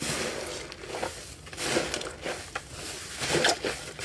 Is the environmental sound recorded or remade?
recorded